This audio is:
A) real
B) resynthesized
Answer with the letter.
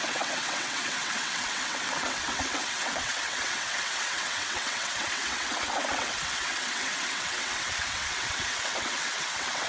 B